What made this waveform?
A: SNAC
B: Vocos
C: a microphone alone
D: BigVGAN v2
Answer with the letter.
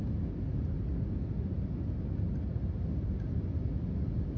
C